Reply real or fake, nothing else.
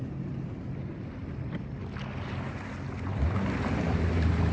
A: real